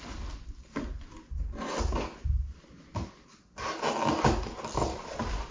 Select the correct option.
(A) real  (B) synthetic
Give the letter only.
A